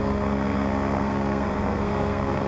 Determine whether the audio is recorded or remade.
remade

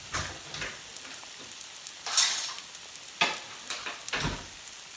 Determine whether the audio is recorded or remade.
recorded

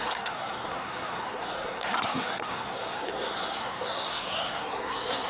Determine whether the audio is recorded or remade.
remade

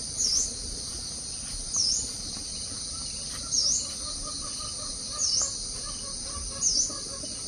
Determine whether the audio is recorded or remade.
recorded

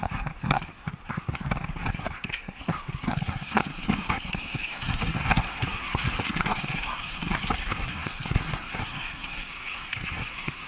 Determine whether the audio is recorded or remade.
remade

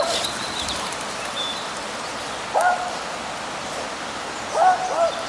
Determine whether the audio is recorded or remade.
recorded